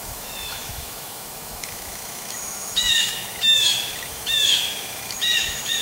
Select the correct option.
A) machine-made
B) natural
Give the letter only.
A